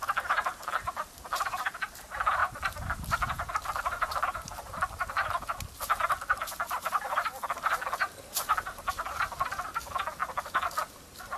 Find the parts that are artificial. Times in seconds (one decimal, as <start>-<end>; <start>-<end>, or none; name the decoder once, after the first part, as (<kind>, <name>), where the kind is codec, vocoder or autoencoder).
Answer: none